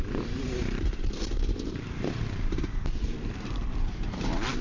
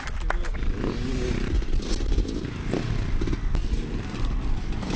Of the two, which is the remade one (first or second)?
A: first